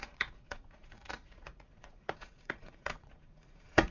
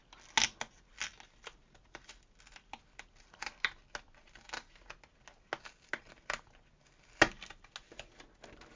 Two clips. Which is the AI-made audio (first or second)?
first